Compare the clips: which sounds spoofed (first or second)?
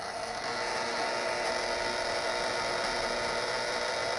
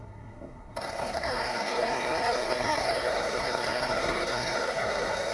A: second